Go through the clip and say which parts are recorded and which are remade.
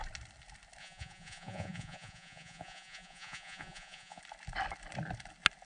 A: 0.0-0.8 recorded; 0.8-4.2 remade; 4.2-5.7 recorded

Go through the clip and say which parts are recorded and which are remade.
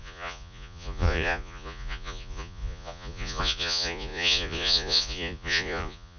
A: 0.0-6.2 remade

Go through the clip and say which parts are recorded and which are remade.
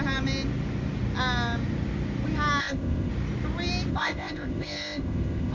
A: 0.0-2.6 recorded; 2.6-3.1 remade; 3.1-3.9 recorded; 3.9-5.5 remade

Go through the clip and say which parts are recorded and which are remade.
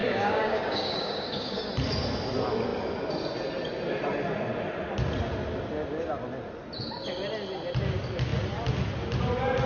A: 0.0-1.7 remade; 1.7-9.7 recorded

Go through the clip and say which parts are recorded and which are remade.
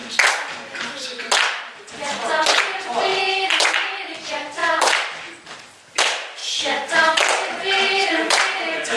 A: 0.0-2.6 recorded; 2.6-6.4 remade; 6.4-7.5 recorded; 7.5-9.0 remade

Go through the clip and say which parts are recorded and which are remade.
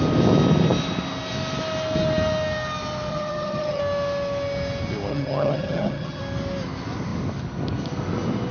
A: 0.0-3.1 recorded; 3.1-3.8 remade; 3.8-5.1 recorded; 5.1-6.2 remade; 6.2-8.5 recorded